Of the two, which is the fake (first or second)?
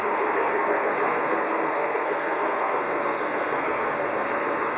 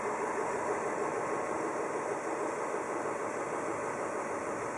first